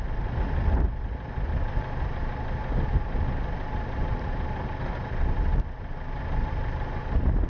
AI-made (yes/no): no